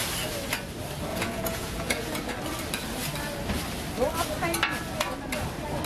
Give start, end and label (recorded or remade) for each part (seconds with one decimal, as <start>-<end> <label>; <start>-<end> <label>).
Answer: 0.0-1.1 recorded; 1.1-2.3 remade; 2.3-5.9 recorded